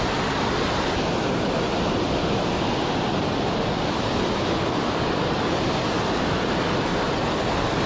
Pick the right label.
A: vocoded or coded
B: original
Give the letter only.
B